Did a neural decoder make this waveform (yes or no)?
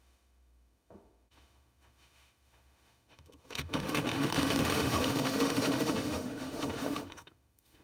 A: yes